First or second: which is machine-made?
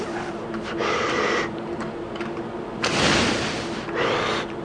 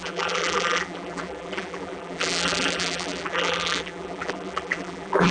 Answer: second